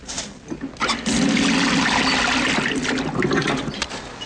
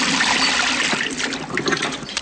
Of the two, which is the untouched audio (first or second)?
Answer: first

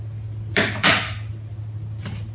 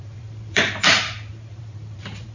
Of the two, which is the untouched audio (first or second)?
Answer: first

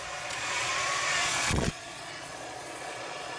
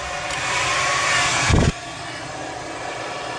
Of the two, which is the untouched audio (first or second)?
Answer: second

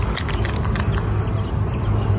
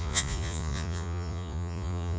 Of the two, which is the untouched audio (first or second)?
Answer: first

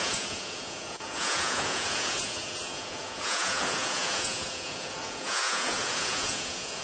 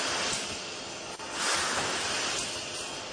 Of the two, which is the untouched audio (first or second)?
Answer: second